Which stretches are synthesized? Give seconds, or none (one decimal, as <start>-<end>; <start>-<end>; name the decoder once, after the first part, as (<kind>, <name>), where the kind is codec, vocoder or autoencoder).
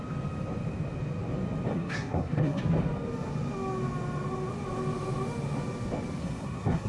1.7-2.6 (codec, SNAC); 6.2-6.9